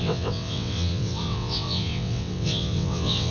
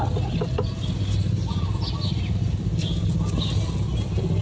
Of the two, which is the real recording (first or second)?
second